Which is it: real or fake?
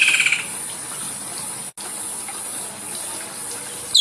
real